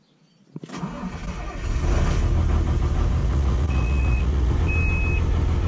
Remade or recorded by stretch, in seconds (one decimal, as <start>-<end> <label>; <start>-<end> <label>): 0.0-3.2 recorded; 3.2-4.5 remade; 4.5-5.7 recorded